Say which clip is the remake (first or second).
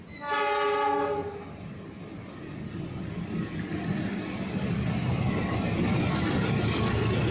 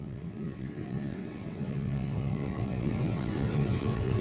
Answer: second